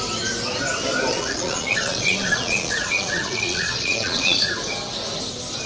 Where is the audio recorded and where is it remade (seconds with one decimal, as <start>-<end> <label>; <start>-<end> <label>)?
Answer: 0.0-1.1 recorded; 1.1-4.5 remade; 4.5-5.7 recorded